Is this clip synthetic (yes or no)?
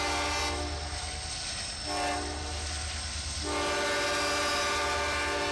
no